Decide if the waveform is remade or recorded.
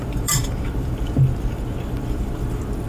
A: remade